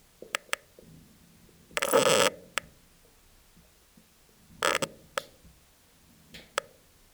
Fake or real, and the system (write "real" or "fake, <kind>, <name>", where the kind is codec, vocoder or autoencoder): real